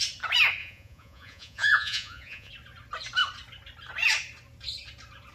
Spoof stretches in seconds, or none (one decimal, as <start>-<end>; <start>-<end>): 0.6-2.5